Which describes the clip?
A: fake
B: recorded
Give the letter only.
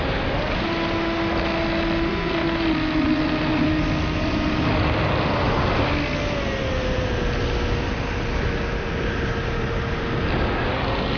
B